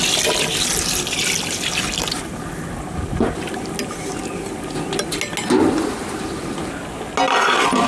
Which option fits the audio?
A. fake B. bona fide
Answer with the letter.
B